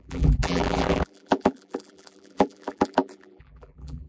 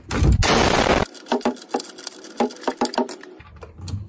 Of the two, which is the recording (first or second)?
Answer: second